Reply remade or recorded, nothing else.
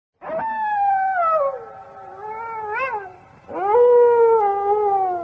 recorded